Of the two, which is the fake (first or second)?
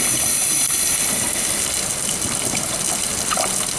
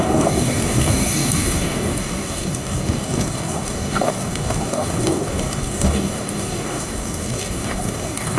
second